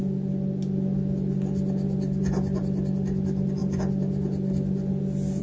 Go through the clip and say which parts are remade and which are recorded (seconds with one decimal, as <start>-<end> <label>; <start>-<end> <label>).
0.0-5.4 recorded